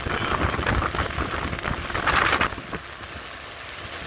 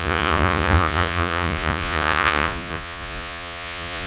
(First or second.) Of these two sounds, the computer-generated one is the second